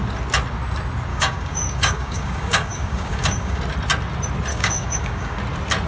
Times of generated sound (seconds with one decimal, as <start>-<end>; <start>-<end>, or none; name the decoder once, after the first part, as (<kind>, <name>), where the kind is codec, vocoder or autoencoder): 1.1-3.6 (codec, DAC); 4.5-5.4